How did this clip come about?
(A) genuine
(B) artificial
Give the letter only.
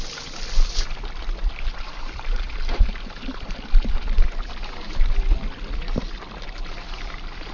A